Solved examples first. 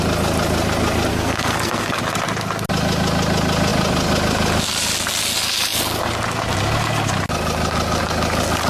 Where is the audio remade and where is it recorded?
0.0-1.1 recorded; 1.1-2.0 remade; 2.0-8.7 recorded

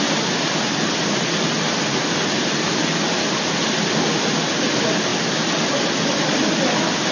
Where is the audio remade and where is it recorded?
0.0-7.1 recorded

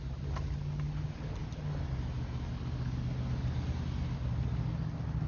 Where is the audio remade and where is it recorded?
0.0-5.3 recorded

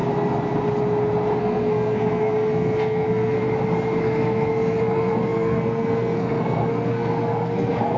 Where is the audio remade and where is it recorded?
0.0-1.4 recorded; 1.4-3.4 remade; 3.4-4.0 recorded; 4.0-8.0 remade

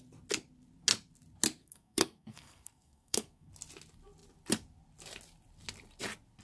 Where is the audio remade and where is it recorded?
0.0-1.6 recorded; 1.6-3.5 remade; 3.5-6.4 recorded

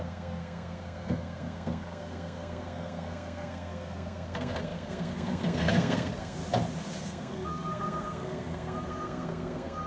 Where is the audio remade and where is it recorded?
0.0-6.4 remade; 6.4-7.0 recorded; 7.0-9.9 remade

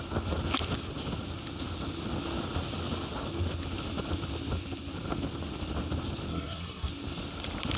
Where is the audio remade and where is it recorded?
0.0-6.3 recorded; 6.3-6.9 remade; 6.9-7.8 recorded

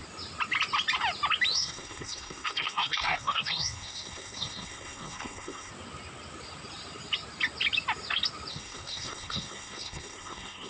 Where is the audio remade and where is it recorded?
0.0-1.5 recorded; 1.5-5.7 remade; 5.7-8.5 recorded; 8.5-10.7 remade